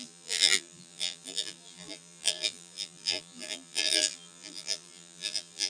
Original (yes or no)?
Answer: no